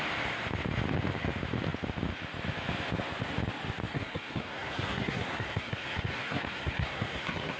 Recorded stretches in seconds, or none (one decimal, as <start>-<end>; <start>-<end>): 0.0-3.9